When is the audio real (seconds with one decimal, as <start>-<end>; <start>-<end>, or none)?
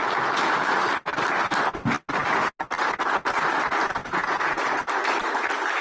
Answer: 0.0-4.0; 4.6-5.8